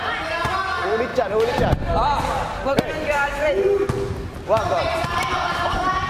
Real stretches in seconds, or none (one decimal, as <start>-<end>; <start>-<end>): 0.0-1.1; 1.9-6.1